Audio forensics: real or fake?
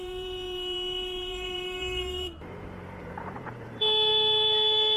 fake